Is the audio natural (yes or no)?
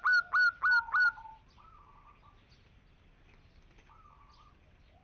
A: yes